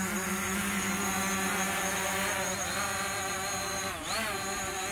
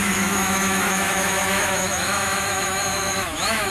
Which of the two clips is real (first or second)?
first